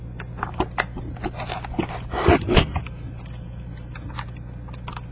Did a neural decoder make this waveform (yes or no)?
no